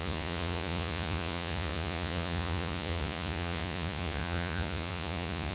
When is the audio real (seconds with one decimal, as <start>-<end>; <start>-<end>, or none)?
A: none